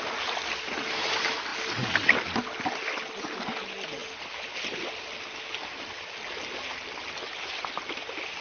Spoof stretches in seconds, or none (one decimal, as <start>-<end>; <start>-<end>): none

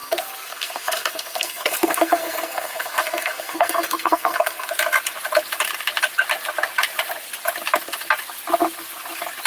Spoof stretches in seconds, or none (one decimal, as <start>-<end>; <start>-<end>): 0.0-4.7

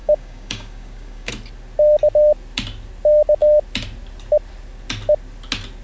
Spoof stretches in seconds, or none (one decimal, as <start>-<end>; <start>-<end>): 0.0-1.3

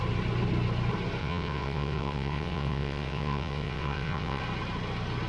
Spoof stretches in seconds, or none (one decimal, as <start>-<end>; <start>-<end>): 1.2-4.4